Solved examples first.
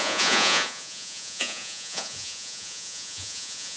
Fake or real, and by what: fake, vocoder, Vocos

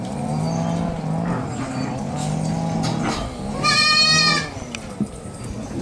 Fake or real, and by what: real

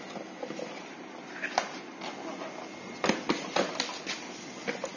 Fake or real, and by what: real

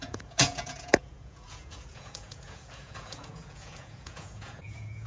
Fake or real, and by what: fake, vocoder, Vocos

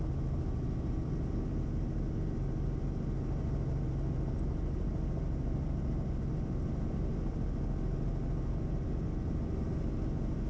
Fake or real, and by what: real